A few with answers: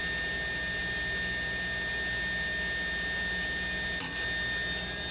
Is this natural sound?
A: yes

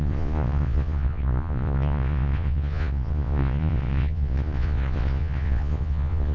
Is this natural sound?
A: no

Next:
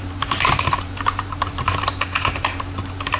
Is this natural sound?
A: no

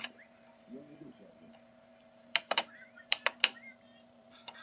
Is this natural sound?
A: no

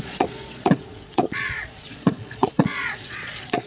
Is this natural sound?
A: no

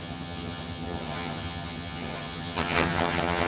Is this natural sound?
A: no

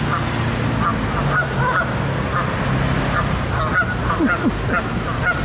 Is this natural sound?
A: yes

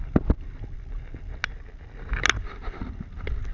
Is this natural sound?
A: yes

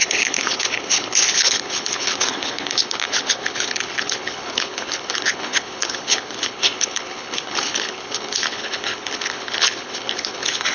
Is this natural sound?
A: no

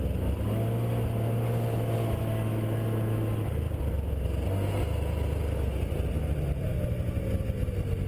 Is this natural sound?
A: yes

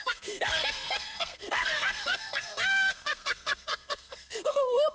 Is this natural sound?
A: no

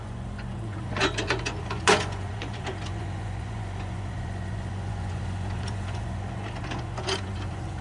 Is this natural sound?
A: no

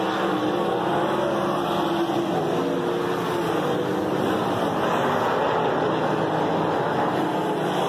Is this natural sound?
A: yes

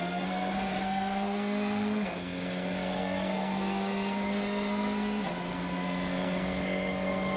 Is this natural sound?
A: no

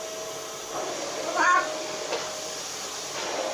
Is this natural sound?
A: yes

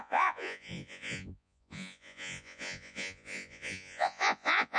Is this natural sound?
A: no